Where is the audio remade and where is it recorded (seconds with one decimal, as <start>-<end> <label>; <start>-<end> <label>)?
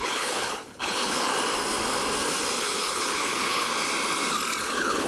0.0-1.3 remade; 1.3-2.6 recorded; 2.6-3.7 remade; 3.7-4.6 recorded; 4.6-5.1 remade